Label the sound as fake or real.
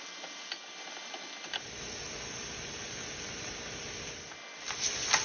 real